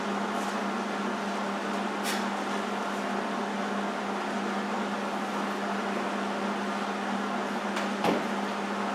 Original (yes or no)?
yes